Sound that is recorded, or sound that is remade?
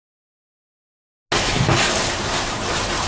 recorded